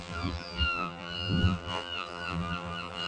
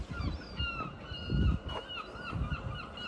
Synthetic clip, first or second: first